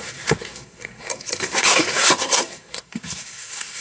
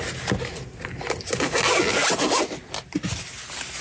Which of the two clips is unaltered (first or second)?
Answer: second